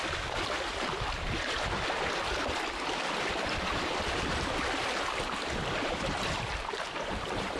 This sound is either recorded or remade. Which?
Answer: remade